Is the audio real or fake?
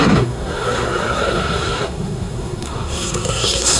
fake